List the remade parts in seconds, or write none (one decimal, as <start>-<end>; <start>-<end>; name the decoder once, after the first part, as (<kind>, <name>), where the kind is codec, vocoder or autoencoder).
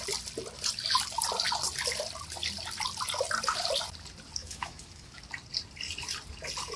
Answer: 4.4-5.2 (autoencoder, DAC-VAE)